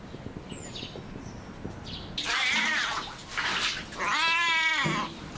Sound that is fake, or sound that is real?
real